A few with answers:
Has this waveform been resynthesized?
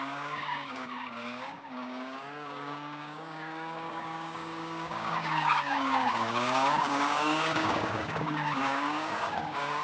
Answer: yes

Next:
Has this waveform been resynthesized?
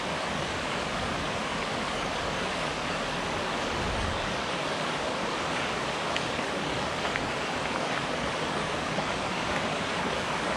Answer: yes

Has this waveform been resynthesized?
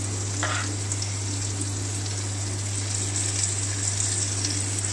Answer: no